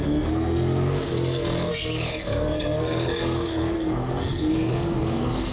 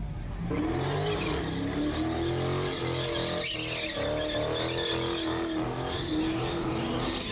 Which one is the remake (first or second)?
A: first